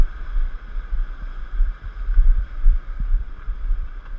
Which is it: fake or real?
fake